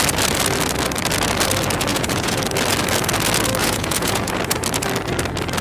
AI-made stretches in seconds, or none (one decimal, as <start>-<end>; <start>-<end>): 1.9-2.4; 3.6-4.3